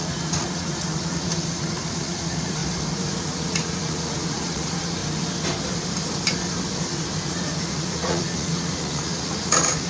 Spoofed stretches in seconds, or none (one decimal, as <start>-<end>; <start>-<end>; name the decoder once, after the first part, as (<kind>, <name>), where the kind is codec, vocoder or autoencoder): 0.0-2.6 (vocoder, Vocos); 3.2-5.0; 7.3-9.9